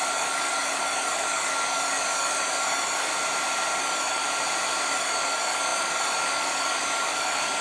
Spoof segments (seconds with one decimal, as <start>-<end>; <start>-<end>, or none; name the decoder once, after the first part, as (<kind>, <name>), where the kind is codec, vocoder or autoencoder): 0.0-3.1 (codec, DAC); 3.8-4.2; 4.9-7.6